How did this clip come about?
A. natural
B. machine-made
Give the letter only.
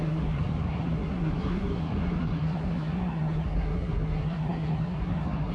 B